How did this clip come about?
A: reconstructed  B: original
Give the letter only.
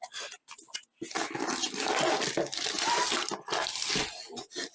B